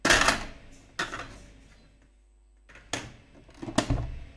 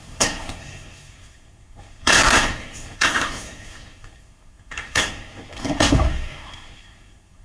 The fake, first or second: second